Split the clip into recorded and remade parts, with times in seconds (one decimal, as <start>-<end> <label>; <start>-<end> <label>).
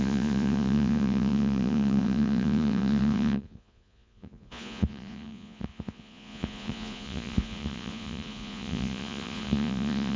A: 0.0-10.2 remade